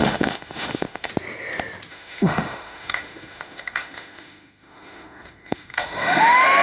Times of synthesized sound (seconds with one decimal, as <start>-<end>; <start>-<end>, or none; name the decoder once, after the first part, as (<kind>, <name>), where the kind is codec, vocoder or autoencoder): 0.0-1.1 (autoencoder, DAC-VAE); 1.9-6.6